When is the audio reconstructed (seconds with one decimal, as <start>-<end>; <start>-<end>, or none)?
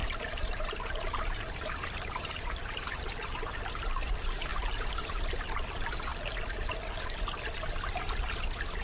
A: 0.0-3.6; 4.5-5.2